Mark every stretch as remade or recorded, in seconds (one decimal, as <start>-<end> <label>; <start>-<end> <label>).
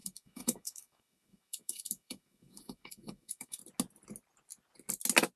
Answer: 0.0-3.6 remade; 3.6-5.4 recorded